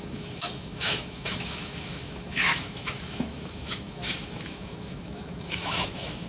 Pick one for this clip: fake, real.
fake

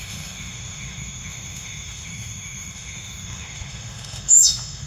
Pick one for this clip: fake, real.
fake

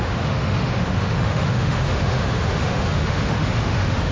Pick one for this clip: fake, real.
fake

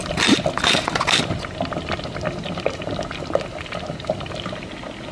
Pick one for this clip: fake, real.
real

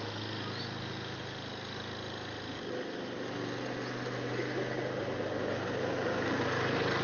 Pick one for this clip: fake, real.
real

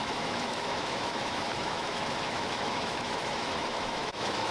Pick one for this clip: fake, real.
fake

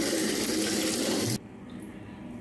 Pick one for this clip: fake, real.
real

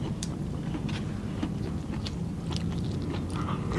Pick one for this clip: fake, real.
real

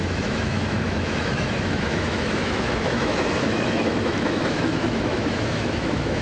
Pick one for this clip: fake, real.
fake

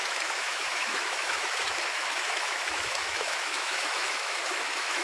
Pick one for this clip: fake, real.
fake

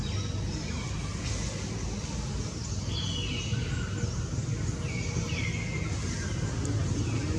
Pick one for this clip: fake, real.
real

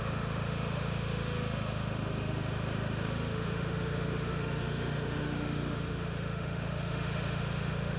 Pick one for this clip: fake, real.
fake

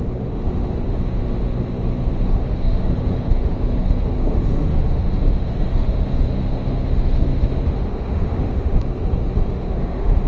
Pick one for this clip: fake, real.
fake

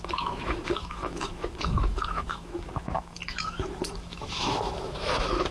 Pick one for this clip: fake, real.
fake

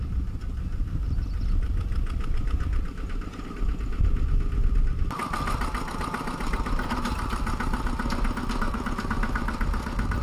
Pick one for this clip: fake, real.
real